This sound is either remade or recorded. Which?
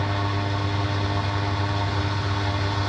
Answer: recorded